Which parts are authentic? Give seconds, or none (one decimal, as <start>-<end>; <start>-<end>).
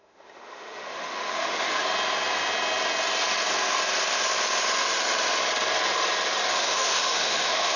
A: 1.8-6.5